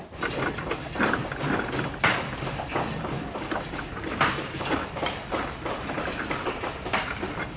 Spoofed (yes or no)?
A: yes